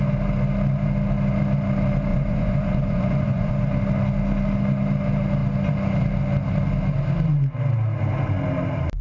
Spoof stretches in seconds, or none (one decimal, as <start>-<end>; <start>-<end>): 2.1-3.5